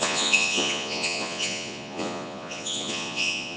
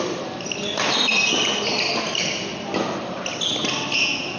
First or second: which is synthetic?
first